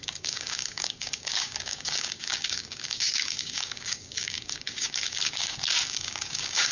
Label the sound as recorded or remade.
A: remade